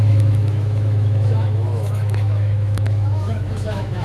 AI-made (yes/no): yes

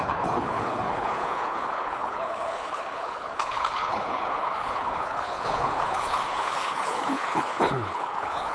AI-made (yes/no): yes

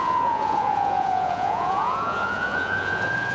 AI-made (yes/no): yes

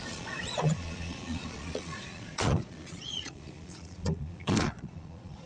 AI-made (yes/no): yes